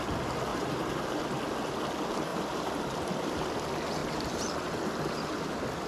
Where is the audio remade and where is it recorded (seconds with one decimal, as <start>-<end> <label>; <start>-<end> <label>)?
0.0-0.5 recorded; 0.5-1.2 remade; 1.2-2.3 recorded; 2.3-3.1 remade; 3.1-4.0 recorded; 4.0-4.9 remade; 4.9-5.9 recorded